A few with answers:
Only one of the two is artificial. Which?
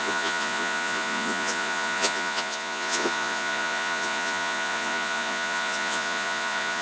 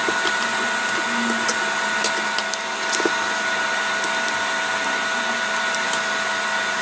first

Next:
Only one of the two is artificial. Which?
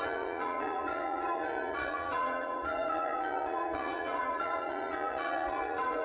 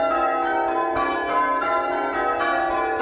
first